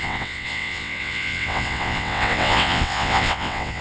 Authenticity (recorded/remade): remade